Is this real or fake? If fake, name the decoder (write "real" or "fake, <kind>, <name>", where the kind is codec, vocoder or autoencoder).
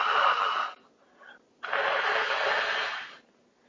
real